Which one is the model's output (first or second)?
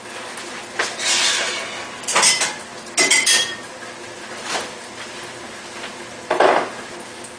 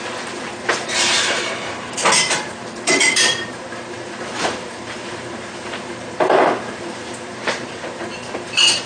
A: second